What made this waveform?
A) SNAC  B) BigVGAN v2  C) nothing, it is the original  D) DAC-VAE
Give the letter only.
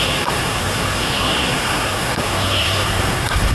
A